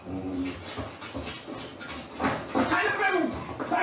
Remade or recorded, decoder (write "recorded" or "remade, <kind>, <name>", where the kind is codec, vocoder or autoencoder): recorded